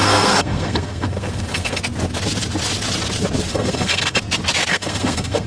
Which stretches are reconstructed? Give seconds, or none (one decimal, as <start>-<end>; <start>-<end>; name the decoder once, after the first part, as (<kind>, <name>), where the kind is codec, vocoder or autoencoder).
0.0-1.8 (codec, SNAC); 3.5-4.2; 4.7-5.5